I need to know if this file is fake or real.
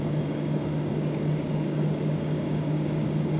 fake